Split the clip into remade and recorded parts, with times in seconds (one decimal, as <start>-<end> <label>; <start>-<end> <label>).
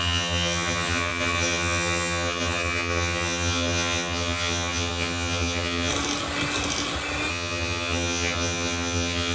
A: 0.0-5.9 remade; 5.9-7.3 recorded; 7.3-9.3 remade